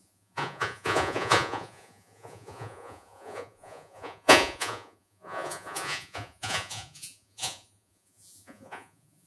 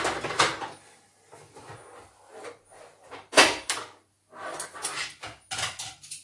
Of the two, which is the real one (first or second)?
second